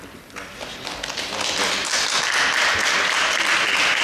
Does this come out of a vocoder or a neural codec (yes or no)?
no